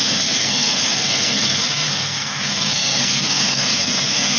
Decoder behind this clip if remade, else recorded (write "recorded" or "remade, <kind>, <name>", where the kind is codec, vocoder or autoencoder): remade, codec, SNAC